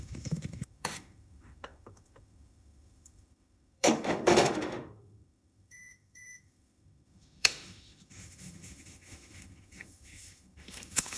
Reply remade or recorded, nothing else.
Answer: remade